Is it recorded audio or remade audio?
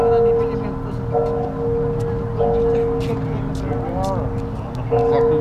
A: recorded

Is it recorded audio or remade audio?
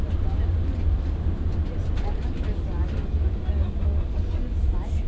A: recorded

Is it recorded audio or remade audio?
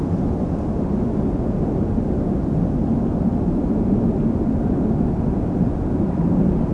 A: recorded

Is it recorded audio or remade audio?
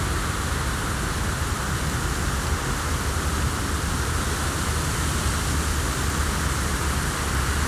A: recorded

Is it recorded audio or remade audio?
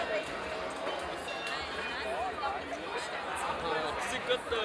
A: recorded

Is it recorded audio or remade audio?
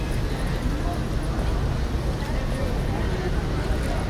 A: recorded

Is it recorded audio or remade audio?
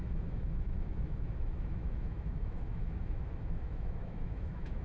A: remade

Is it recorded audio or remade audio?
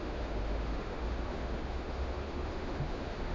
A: remade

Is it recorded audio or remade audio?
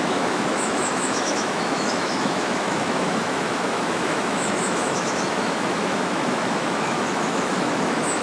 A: remade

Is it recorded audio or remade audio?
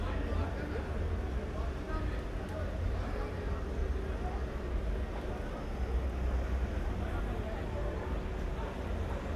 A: recorded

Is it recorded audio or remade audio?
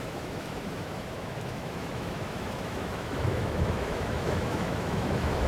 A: remade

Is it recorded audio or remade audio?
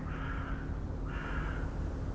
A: recorded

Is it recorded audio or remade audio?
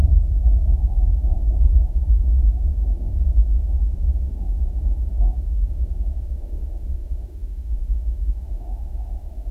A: remade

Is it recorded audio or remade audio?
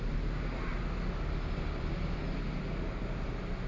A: recorded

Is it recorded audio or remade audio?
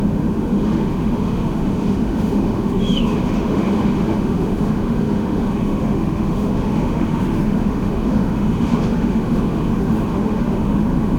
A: remade